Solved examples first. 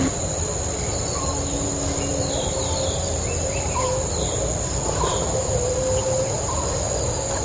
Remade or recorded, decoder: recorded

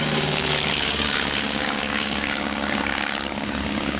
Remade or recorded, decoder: remade, codec, DAC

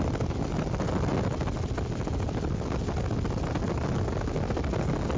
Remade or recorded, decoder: recorded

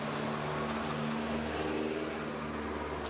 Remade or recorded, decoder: recorded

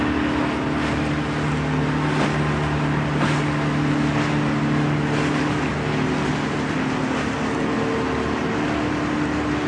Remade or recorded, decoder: recorded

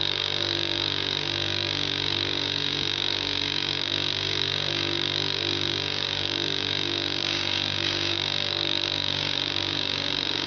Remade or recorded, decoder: remade, codec, DAC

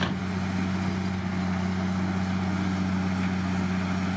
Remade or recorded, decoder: recorded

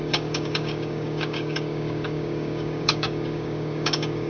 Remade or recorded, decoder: remade, codec, DAC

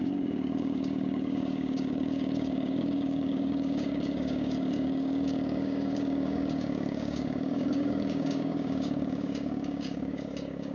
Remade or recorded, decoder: remade, codec, DAC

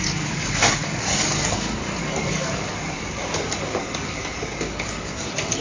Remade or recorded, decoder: remade, codec, DAC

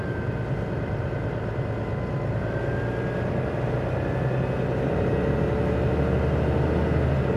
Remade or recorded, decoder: recorded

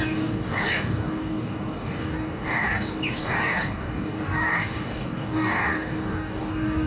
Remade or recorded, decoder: remade, codec, DAC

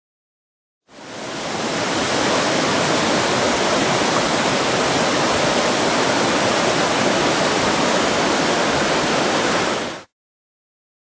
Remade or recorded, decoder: recorded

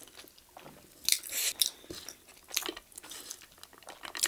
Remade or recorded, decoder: recorded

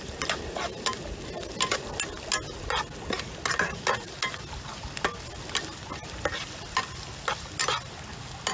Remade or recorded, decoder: recorded